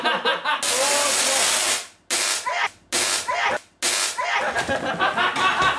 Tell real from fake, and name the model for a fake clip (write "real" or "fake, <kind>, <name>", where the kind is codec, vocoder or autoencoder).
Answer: real